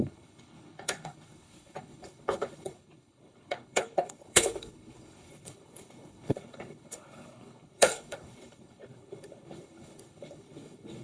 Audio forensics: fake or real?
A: fake